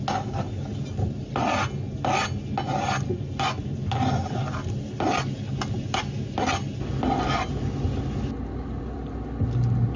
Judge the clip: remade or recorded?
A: recorded